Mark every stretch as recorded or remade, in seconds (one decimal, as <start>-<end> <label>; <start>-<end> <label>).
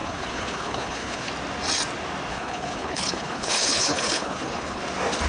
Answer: 0.0-1.3 remade; 1.3-2.3 recorded; 2.3-4.8 remade; 4.8-5.3 recorded